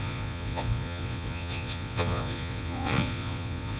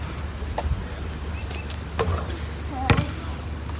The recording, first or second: second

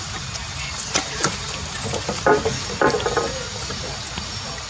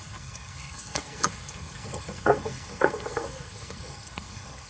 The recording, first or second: first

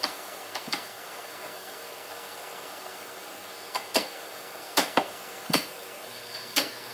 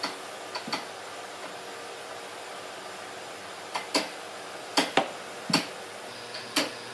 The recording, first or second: second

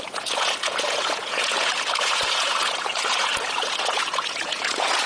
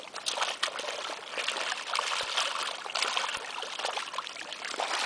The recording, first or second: second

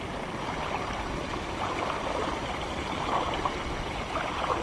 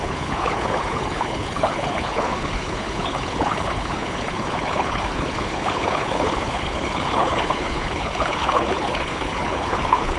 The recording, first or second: first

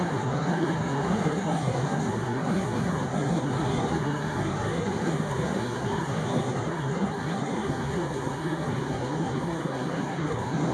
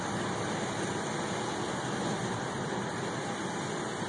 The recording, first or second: second